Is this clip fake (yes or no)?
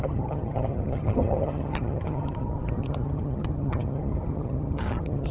yes